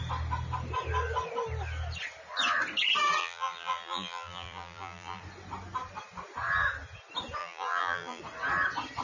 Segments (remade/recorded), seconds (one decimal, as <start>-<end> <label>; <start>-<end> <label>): 0.0-3.2 recorded; 3.2-5.2 remade; 5.2-7.4 recorded; 7.4-8.2 remade; 8.2-9.0 recorded